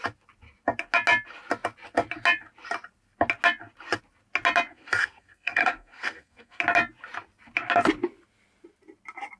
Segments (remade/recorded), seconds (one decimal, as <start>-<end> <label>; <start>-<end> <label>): 0.0-4.7 recorded; 4.7-6.6 remade; 6.6-9.4 recorded